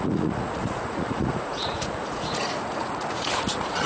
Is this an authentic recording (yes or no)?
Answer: no